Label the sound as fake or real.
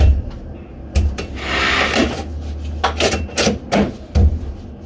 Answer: real